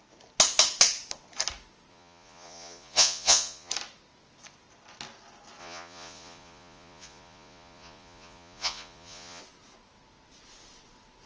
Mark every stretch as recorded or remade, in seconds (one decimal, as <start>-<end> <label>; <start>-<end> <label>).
0.0-1.9 recorded; 1.9-3.7 remade; 3.7-5.6 recorded; 5.6-9.4 remade; 9.4-11.3 recorded